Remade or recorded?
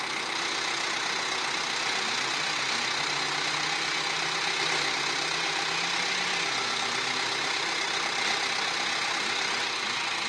recorded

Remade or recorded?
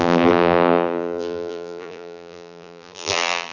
remade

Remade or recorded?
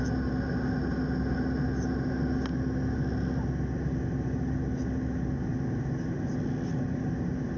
recorded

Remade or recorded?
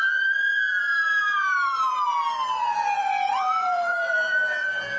remade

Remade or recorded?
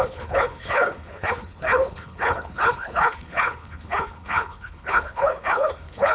remade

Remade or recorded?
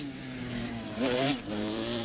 remade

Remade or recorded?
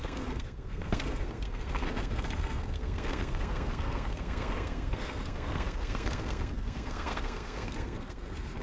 remade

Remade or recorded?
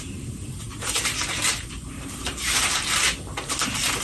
remade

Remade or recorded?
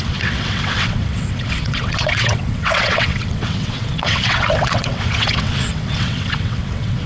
remade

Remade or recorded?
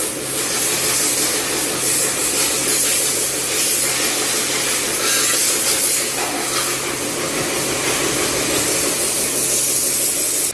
recorded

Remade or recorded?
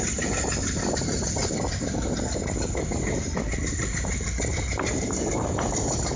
recorded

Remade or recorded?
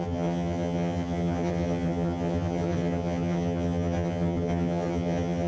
remade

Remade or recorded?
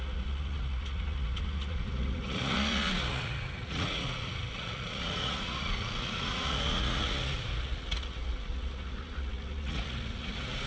remade